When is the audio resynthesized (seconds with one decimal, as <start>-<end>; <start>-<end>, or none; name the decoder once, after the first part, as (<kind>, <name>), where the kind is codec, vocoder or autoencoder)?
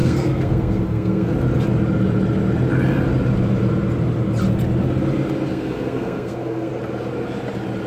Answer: 0.0-1.3 (codec, SNAC); 5.5-6.7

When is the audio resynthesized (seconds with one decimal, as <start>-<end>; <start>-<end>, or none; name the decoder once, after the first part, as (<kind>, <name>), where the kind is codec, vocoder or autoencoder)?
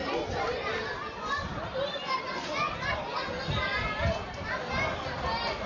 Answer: none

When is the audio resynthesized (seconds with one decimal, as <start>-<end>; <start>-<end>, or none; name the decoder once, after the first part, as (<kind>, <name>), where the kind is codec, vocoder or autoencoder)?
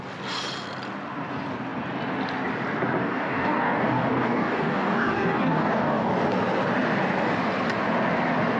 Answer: 3.0-6.1 (codec, DAC)